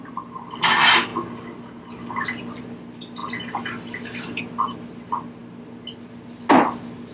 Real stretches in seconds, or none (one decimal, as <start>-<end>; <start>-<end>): 0.0-7.1